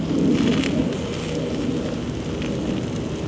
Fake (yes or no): no